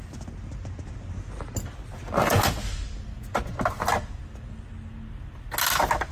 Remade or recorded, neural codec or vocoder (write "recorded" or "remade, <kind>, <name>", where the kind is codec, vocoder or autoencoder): recorded